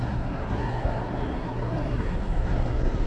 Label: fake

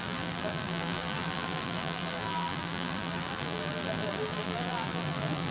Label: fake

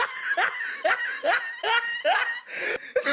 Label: real